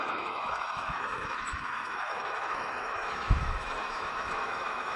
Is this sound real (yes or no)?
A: no